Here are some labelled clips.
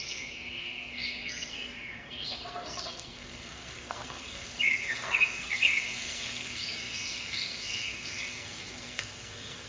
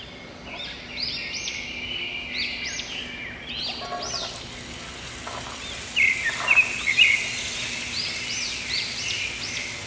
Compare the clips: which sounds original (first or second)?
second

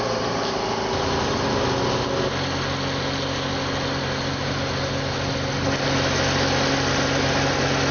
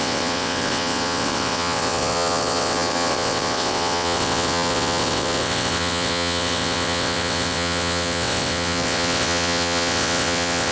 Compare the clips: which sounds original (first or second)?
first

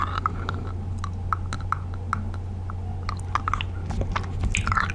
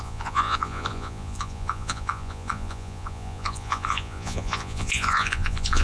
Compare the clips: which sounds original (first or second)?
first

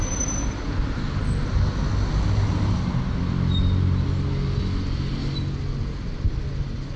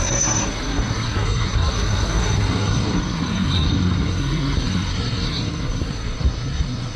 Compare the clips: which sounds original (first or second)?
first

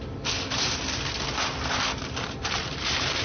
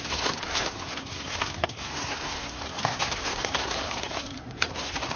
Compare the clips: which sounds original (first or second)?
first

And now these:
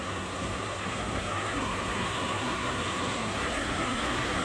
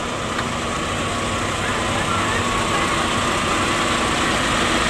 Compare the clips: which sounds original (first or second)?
second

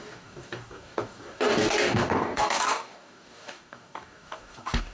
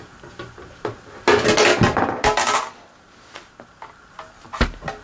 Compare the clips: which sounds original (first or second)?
second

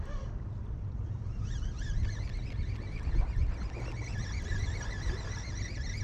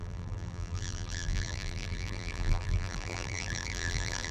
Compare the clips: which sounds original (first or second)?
first